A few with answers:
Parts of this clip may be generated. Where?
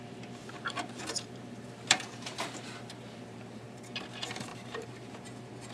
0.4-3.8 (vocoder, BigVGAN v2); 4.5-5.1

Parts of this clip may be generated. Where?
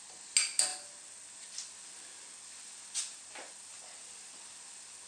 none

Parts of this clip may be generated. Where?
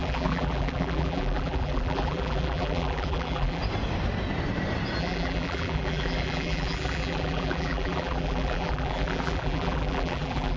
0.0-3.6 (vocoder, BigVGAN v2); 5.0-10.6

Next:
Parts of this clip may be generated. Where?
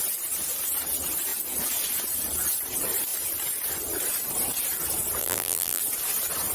5.2-5.8 (vocoder, BigVGAN v2)